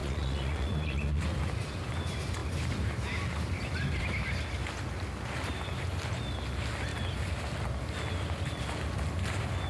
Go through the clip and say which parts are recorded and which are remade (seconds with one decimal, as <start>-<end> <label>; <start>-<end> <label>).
0.0-1.3 remade; 1.3-9.7 recorded